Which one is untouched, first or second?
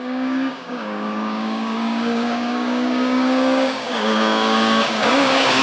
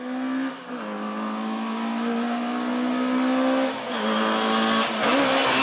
second